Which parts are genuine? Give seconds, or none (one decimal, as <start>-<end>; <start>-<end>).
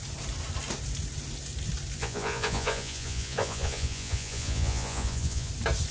0.0-2.0; 5.5-5.9